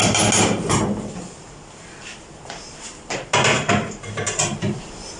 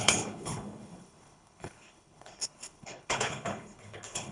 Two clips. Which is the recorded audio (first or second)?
first